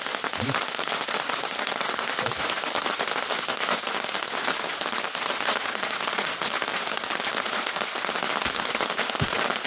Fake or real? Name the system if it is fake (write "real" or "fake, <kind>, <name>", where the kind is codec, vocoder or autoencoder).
real